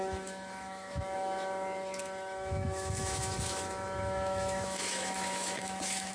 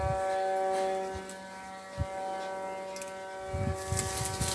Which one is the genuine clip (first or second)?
second